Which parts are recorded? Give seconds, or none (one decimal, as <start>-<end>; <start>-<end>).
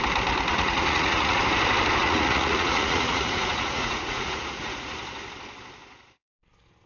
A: 0.0-0.5; 1.4-2.0; 5.0-6.9